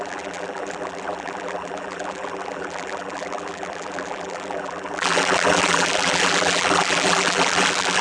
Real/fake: fake